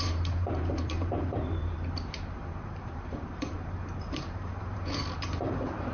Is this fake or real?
fake